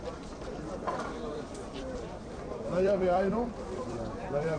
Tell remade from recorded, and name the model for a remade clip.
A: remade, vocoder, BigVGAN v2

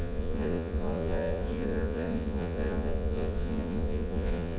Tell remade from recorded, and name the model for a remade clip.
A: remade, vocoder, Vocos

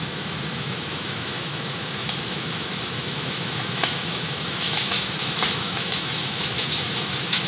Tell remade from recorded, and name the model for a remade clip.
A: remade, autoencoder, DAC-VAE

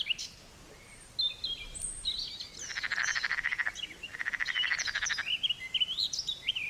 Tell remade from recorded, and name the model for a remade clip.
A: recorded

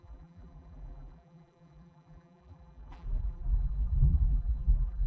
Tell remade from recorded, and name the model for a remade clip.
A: remade, vocoder, BigVGAN v2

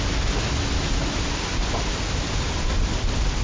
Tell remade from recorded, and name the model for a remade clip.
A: recorded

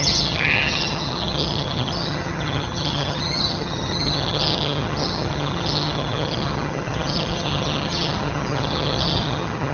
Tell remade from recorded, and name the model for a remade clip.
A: remade, vocoder, HiFi-GAN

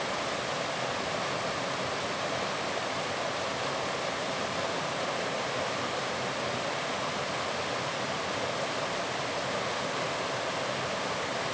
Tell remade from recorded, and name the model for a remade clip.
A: recorded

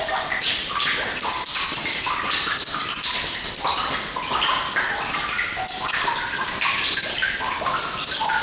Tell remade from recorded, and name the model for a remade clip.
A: recorded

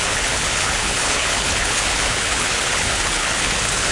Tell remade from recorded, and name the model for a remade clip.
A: remade, codec, HILCodec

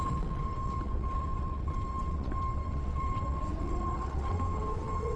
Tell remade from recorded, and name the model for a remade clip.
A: remade, vocoder, WaveNeXt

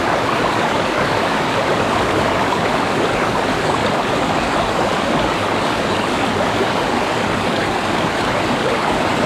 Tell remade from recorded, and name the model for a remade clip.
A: remade, codec, DAC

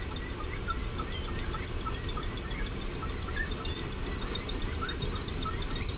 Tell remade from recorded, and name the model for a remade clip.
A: recorded